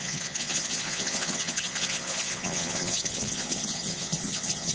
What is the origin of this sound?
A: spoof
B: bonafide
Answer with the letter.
A